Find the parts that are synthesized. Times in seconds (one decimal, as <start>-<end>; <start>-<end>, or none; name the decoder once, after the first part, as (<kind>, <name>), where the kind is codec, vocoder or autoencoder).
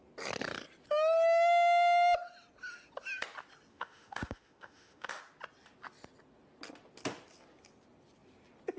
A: 3.7-5.2 (autoencoder, DAC-VAE)